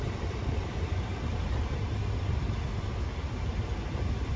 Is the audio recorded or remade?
recorded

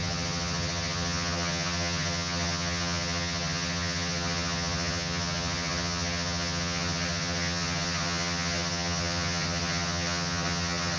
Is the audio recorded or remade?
remade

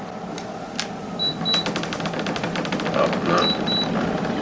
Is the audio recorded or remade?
recorded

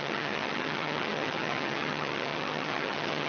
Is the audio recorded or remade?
remade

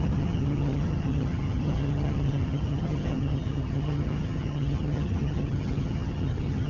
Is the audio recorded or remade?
remade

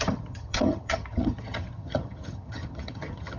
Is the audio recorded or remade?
remade